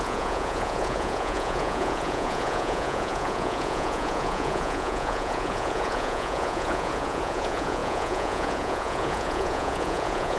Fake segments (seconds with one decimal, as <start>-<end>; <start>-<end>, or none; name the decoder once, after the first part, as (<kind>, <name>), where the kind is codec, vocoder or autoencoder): 0.0-10.4 (vocoder, Vocos)

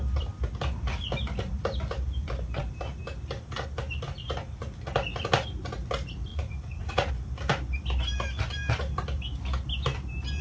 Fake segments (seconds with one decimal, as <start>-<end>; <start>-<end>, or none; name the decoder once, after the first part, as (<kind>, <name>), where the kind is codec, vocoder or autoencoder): 6.3-7.1 (vocoder, Vocos)

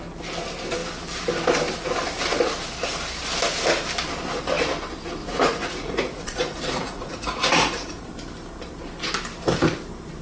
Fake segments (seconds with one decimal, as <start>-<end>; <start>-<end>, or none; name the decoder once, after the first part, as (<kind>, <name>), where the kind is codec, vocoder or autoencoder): 5.2-8.1 (vocoder, Vocos)

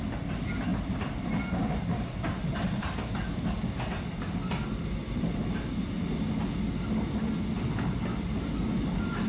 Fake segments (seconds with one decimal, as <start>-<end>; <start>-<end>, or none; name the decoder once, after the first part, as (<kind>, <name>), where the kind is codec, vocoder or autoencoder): none

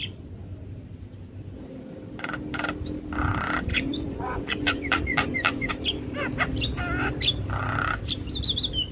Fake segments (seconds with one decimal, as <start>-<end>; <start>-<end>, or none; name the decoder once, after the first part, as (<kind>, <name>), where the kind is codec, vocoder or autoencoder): 3.7-5.7 (vocoder, Vocos)